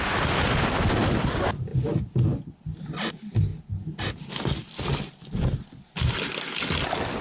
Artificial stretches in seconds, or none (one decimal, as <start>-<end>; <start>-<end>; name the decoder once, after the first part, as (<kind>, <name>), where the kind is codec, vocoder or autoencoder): none